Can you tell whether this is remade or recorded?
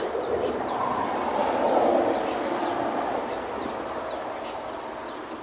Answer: remade